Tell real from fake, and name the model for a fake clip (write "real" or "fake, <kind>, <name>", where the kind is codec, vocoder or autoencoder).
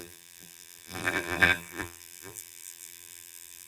fake, vocoder, BigVGAN v2